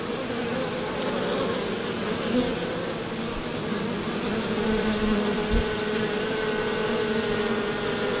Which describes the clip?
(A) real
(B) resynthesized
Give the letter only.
A